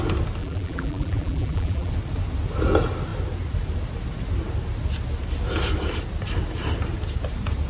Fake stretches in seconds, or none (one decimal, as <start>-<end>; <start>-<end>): 0.4-1.9